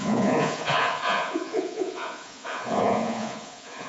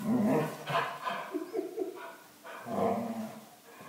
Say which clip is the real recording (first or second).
second